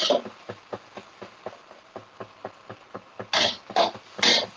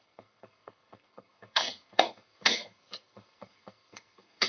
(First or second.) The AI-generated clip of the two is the second